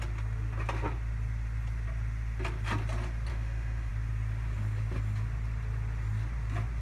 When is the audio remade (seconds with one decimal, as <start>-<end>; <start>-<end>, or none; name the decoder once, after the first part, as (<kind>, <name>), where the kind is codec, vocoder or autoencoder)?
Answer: 3.3-3.9 (autoencoder, DAC-VAE)